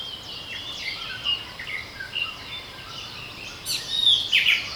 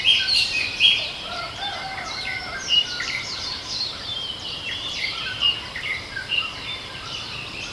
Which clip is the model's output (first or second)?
second